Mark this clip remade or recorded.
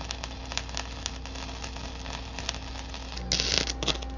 recorded